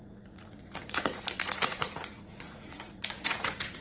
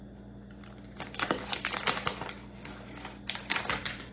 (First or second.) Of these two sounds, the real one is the second